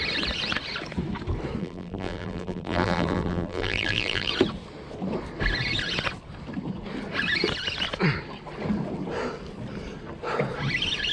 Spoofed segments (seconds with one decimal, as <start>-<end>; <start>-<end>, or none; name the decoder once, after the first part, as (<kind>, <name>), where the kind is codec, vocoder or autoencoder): 1.6-4.3 (vocoder, BigVGAN v2)